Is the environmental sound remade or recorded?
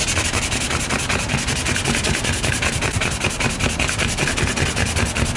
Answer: recorded